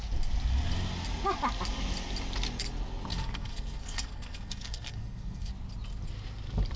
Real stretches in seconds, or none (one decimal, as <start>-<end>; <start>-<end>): 0.0-3.1; 5.5-6.8